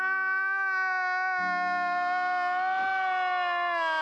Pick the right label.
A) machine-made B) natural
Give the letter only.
B